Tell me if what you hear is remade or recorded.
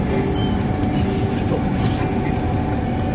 recorded